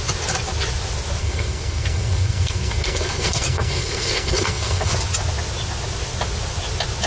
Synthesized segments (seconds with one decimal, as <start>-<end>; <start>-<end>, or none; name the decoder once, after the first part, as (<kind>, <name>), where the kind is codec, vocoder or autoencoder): 1.2-4.9 (codec, SNAC)